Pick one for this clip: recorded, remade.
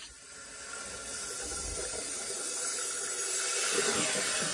recorded